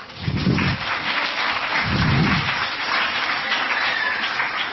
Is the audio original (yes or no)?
yes